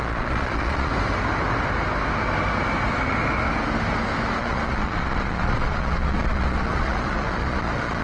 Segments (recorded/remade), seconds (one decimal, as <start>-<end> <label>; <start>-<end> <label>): 0.0-0.9 remade; 0.9-4.4 recorded; 4.4-8.0 remade